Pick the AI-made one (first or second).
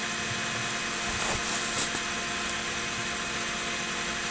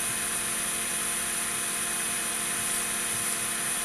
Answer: second